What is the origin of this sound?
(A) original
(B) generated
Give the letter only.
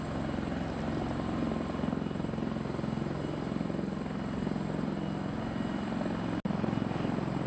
A